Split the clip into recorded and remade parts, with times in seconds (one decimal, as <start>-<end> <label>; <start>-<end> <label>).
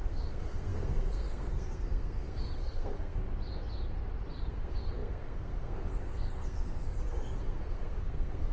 0.0-3.2 remade; 3.2-4.5 recorded; 4.5-8.5 remade